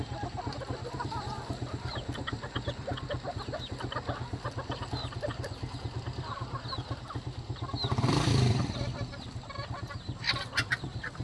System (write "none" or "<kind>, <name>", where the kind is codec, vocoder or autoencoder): vocoder, BigVGAN v2